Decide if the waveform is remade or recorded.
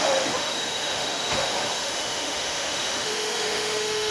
remade